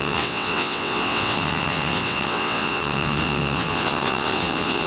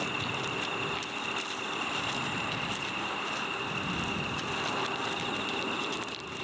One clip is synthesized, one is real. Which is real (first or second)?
second